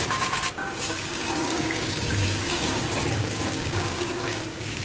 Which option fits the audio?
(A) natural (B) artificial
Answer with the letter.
B